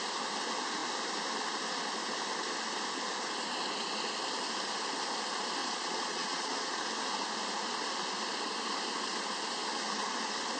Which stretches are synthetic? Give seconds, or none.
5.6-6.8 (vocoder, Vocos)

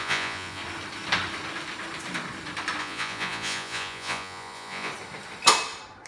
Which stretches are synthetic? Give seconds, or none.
0.0-0.6 (vocoder, Vocos); 2.8-4.9